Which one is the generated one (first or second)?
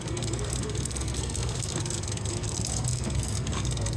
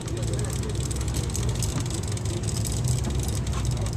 first